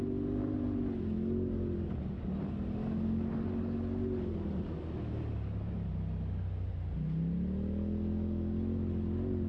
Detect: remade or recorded recorded